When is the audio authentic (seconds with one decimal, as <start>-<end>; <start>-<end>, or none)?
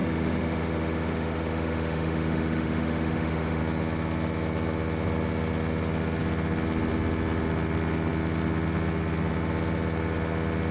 3.6-10.7